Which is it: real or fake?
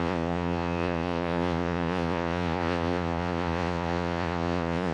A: fake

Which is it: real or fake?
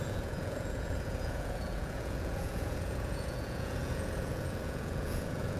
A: fake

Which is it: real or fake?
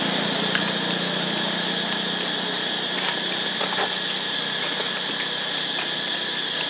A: real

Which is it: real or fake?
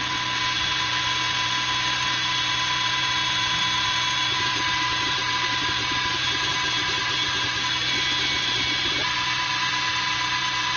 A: real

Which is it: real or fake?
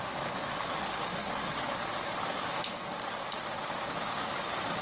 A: real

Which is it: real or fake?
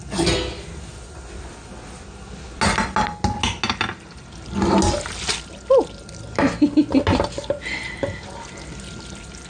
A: real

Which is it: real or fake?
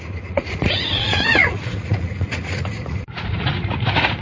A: fake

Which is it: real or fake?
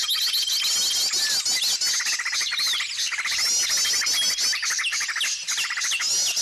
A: real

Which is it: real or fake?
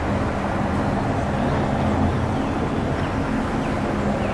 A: real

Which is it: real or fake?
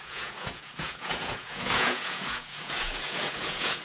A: fake